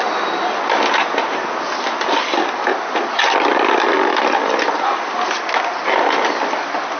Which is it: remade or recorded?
recorded